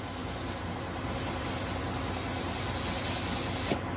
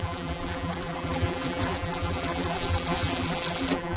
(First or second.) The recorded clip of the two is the first